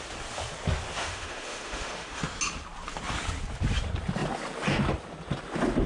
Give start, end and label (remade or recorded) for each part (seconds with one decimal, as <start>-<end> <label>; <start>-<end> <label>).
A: 0.0-1.0 recorded; 1.0-2.2 remade; 2.2-5.9 recorded